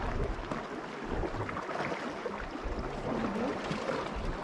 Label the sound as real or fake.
real